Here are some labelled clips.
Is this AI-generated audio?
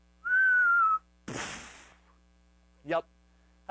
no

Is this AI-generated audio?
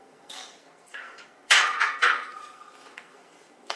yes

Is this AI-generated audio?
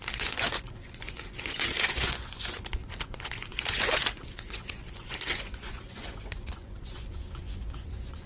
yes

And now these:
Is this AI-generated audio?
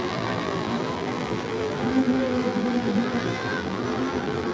yes